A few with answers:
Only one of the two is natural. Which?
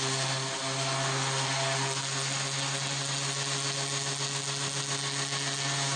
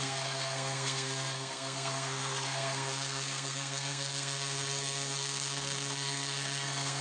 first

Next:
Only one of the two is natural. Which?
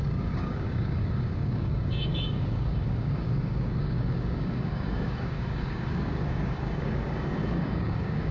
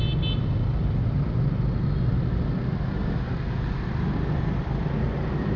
second